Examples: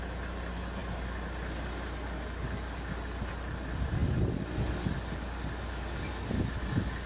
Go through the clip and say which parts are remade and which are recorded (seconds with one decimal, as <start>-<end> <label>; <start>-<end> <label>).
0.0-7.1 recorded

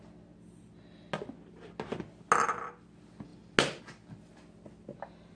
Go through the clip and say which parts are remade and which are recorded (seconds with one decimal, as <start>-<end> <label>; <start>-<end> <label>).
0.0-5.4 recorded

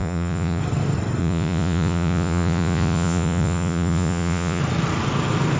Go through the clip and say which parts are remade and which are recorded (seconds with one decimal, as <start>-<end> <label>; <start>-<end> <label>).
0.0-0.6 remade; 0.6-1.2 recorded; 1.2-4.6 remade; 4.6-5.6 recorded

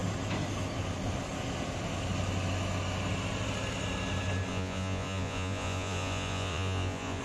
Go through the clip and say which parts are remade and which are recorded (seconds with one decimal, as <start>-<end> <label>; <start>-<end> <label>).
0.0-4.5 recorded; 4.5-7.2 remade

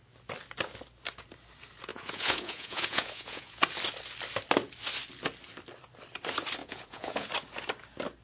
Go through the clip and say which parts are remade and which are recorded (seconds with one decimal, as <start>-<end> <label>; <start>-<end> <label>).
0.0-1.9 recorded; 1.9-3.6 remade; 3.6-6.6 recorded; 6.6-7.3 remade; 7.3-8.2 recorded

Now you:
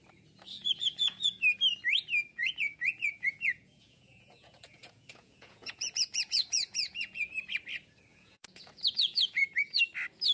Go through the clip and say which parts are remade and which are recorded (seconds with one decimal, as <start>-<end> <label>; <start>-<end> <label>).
0.0-0.6 recorded; 0.6-1.4 remade; 1.4-2.3 recorded; 2.3-7.3 remade; 7.3-8.1 recorded; 8.1-9.8 remade; 9.8-10.3 recorded